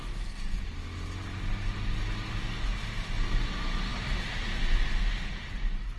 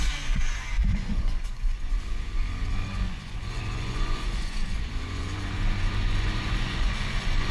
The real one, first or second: first